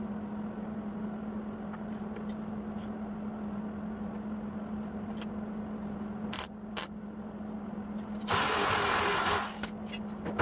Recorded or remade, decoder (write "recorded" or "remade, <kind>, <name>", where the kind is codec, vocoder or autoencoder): recorded